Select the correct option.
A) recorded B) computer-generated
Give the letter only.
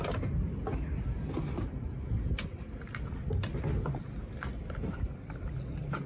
A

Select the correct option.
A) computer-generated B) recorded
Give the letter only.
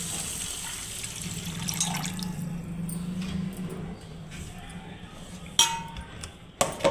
B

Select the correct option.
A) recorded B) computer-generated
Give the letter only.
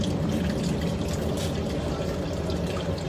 A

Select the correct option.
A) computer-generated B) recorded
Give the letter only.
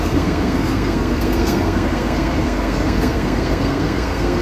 A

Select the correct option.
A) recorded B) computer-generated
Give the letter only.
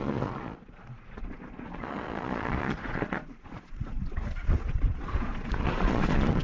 B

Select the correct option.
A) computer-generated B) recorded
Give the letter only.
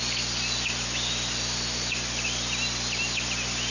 B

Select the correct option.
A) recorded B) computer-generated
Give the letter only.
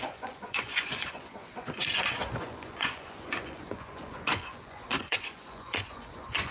B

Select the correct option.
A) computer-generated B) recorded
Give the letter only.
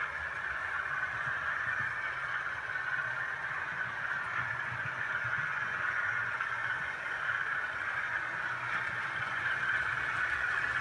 A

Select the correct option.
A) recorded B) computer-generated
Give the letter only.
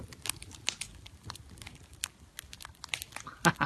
A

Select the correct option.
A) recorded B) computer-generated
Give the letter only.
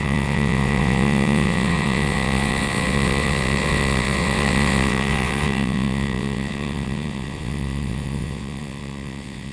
B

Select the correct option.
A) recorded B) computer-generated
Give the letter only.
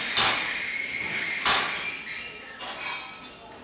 A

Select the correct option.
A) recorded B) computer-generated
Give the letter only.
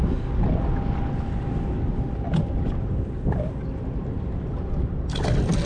A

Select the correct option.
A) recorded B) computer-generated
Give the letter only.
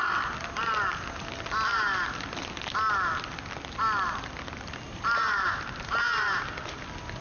A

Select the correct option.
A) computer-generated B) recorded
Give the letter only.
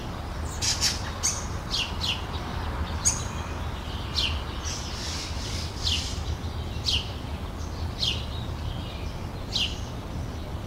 B